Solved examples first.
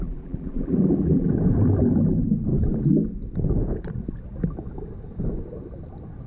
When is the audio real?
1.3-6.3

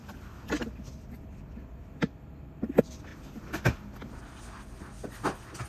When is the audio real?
0.0-5.7

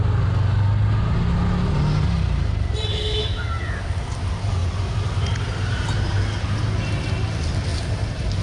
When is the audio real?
0.0-2.9; 3.4-8.4

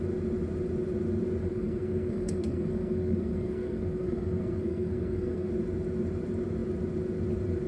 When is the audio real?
0.0-1.4; 5.5-7.7

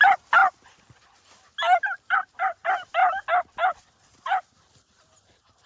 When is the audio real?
0.0-5.7

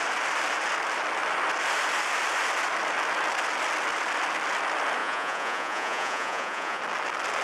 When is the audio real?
0.0-5.0; 6.8-7.4

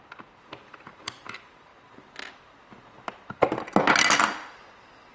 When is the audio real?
1.7-5.1